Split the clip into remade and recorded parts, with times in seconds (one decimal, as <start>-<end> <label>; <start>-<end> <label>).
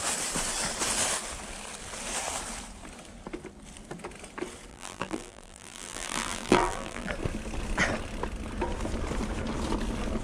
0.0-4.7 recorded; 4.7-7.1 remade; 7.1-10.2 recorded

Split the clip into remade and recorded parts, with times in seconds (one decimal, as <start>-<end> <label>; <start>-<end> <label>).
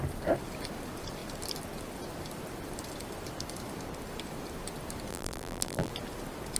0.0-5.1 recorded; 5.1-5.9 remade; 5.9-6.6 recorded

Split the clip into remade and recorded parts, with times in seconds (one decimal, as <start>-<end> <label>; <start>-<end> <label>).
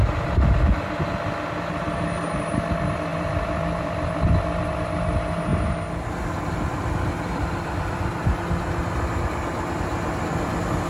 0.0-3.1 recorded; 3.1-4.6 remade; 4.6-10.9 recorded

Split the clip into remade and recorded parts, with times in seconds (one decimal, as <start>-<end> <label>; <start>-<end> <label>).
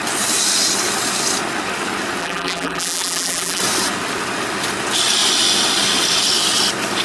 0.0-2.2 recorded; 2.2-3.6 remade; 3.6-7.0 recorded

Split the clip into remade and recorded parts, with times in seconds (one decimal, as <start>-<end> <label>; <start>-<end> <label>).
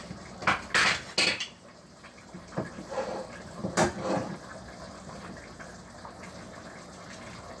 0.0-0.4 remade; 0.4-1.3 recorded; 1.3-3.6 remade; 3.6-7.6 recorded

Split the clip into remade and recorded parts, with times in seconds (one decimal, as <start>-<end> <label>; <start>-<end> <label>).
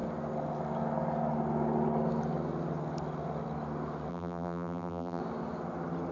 0.0-4.1 recorded; 4.1-5.2 remade; 5.2-6.1 recorded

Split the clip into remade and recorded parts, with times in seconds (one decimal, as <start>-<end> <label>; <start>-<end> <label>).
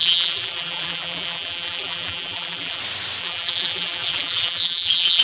0.0-2.8 remade; 2.8-3.2 recorded; 3.2-5.2 remade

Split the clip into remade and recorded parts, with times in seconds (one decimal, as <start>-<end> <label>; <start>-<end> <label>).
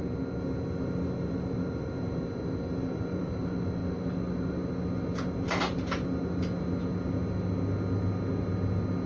0.0-2.8 recorded; 2.8-3.4 remade; 3.4-9.1 recorded